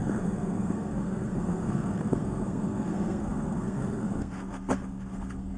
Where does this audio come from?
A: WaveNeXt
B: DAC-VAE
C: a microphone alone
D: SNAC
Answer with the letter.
D